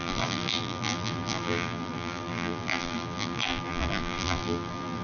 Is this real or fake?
fake